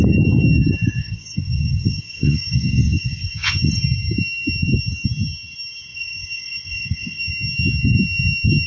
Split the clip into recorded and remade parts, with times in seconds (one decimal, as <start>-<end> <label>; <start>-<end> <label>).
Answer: 0.0-1.0 recorded; 1.0-3.7 remade; 3.7-5.9 recorded; 5.9-7.3 remade; 7.3-8.7 recorded